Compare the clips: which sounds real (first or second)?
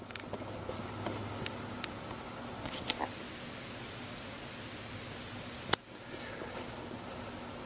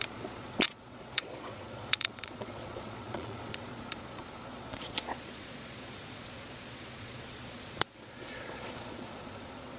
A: first